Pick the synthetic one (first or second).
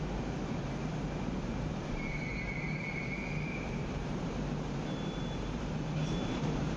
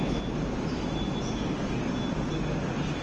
first